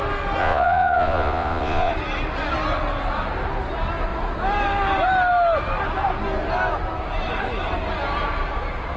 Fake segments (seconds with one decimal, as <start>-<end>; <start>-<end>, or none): 0.4-1.9